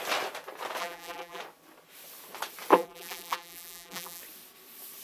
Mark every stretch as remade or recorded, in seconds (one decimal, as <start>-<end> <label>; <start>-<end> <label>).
0.0-0.8 recorded; 0.8-1.4 remade; 1.4-2.7 recorded; 2.7-4.2 remade; 4.2-5.0 recorded